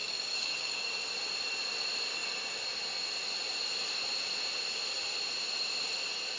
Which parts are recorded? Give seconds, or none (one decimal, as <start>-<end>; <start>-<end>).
0.9-6.4